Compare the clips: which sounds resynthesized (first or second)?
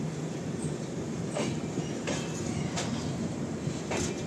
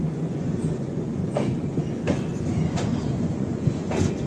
second